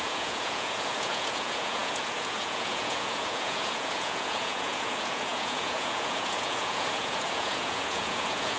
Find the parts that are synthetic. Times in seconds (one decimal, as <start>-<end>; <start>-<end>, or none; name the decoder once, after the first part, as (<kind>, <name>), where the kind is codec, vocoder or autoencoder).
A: 0.0-8.6 (vocoder, Vocos)